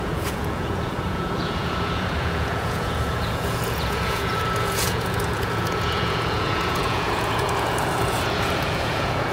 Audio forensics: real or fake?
fake